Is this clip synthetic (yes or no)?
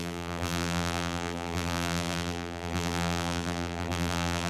yes